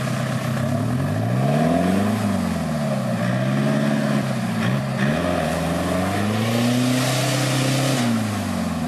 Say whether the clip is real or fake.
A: real